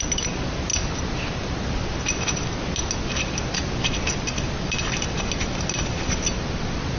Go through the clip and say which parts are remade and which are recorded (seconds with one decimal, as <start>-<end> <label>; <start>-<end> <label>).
0.0-7.0 recorded